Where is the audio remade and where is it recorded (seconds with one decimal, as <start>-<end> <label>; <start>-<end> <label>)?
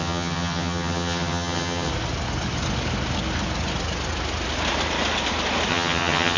0.0-1.9 remade; 1.9-5.7 recorded; 5.7-6.4 remade